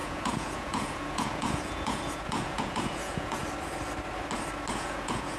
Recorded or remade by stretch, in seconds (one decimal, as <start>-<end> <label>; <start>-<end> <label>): 0.0-3.4 remade; 3.4-4.7 recorded; 4.7-5.4 remade